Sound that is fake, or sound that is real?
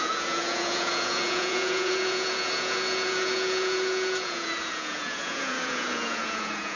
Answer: fake